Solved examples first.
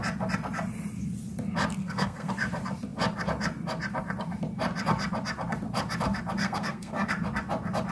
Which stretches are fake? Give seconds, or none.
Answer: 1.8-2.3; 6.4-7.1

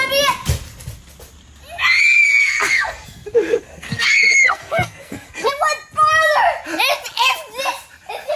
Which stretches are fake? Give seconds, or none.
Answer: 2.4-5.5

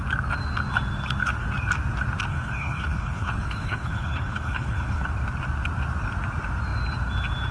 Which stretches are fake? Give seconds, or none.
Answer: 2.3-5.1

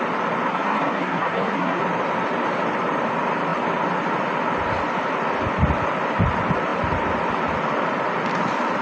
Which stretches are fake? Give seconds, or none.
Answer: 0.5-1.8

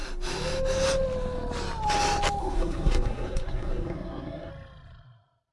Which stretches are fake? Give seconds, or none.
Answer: 2.4-4.5